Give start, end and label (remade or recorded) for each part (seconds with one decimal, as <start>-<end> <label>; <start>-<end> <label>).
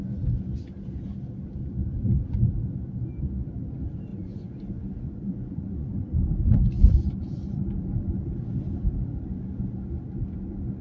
0.0-4.1 recorded; 4.1-6.1 remade; 6.1-10.8 recorded